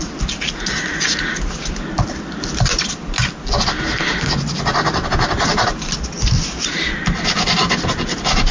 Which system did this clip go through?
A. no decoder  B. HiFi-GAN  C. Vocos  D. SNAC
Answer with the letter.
A